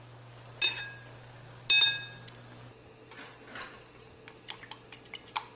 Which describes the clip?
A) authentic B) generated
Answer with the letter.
A